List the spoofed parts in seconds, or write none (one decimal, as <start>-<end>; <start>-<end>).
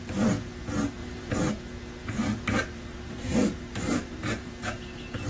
1.0-1.5; 2.0-4.5